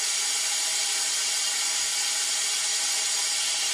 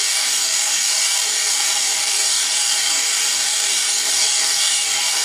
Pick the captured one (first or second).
first